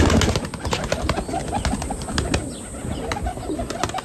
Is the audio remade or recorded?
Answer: recorded